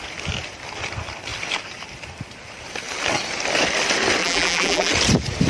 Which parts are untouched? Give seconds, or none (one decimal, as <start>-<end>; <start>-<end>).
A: 0.0-4.2; 4.9-5.5